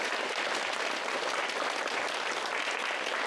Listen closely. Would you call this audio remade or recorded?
recorded